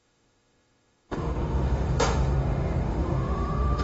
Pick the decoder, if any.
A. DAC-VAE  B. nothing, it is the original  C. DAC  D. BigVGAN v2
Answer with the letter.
A